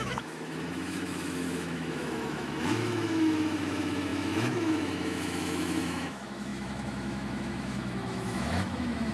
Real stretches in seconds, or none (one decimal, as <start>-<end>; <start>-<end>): none

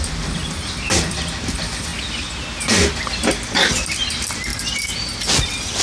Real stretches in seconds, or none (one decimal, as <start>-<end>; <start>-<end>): 1.9-3.3; 4.5-5.2

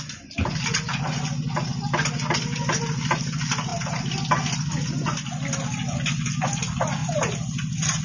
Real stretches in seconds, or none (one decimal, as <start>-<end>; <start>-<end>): 0.0-7.0

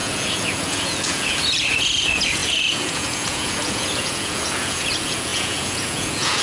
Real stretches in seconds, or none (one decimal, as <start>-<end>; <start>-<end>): none

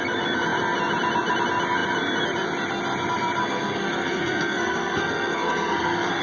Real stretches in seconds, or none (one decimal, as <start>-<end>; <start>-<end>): 0.0-3.4

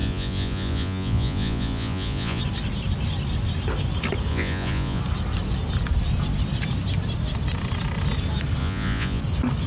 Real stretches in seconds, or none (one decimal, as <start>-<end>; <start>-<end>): 2.4-4.3; 5.0-8.6; 9.2-9.7